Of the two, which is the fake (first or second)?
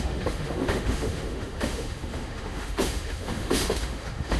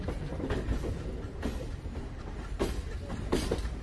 first